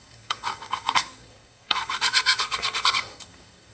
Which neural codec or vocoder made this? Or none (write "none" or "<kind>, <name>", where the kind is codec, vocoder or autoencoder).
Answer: codec, SNAC